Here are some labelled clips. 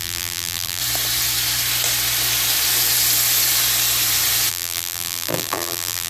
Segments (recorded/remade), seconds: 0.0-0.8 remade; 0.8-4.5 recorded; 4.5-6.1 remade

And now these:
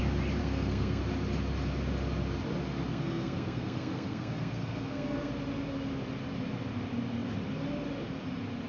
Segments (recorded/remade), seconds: 0.0-0.4 recorded; 0.4-1.0 remade; 1.0-2.9 recorded; 2.9-5.3 remade; 5.3-8.7 recorded